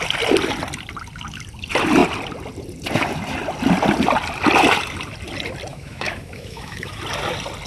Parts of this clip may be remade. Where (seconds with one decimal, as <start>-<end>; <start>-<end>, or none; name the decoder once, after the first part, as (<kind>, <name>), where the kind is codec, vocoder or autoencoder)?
5.7-7.0 (autoencoder, DAC-VAE)